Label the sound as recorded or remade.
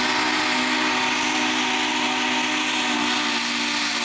recorded